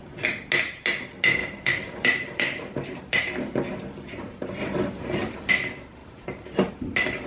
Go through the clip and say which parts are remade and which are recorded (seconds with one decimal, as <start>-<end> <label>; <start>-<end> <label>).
0.0-1.4 recorded; 1.4-3.0 remade; 3.0-4.6 recorded; 4.6-5.5 remade; 5.5-6.0 recorded; 6.0-6.7 remade; 6.7-7.3 recorded